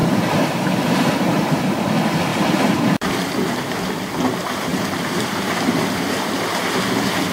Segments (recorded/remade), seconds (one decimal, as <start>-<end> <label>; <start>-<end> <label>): 0.0-1.8 remade; 1.8-2.3 recorded; 2.3-3.1 remade; 3.1-4.7 recorded; 4.7-6.3 remade; 6.3-7.3 recorded